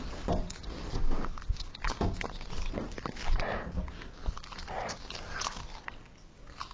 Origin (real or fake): real